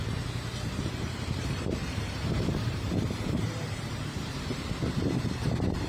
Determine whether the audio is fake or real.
fake